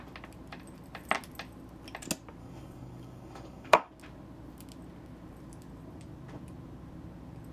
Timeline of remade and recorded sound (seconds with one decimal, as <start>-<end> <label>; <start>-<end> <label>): 0.0-2.4 recorded; 2.4-3.9 remade; 3.9-7.5 recorded